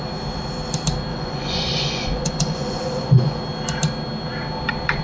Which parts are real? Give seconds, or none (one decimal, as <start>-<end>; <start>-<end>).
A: 0.0-1.1; 3.4-5.0

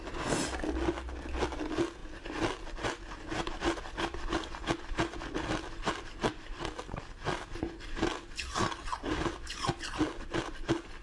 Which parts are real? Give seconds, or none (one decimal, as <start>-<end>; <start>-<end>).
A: 0.0-11.0

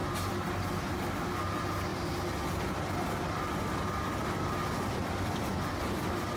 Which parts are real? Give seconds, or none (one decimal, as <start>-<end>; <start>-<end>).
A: 0.0-6.4